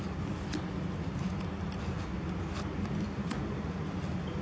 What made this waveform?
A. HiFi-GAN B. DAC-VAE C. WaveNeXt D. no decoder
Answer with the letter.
D